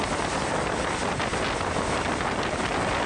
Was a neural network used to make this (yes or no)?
no